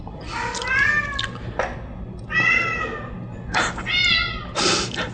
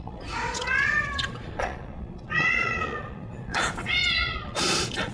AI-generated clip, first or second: second